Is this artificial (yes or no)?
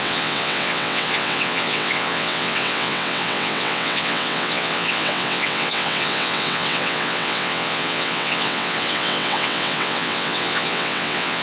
yes